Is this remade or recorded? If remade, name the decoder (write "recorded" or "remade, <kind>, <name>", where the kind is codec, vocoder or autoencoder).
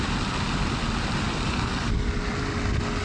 recorded